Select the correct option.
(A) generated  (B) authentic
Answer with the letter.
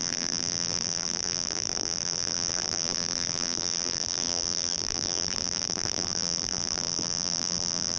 A